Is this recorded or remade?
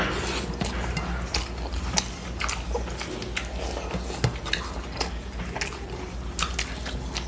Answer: recorded